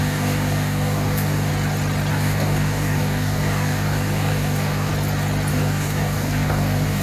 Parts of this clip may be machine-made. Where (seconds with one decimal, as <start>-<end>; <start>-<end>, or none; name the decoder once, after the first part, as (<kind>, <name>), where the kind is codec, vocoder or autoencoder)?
0.0-1.5 (codec, DAC); 2.1-4.9; 5.5-7.0